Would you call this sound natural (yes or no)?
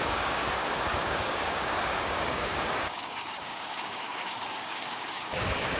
no